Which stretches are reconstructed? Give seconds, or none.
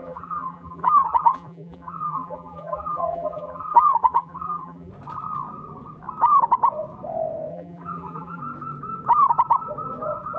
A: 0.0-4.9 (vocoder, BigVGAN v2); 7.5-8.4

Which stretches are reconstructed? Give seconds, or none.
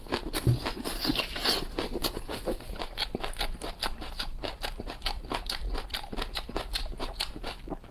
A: 0.0-1.4 (vocoder, BigVGAN v2); 2.3-7.9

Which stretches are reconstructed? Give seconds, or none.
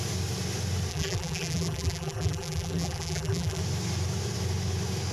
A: 0.9-3.6 (vocoder, BigVGAN v2)